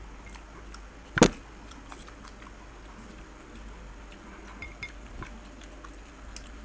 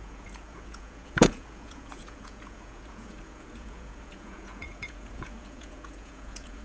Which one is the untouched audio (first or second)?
first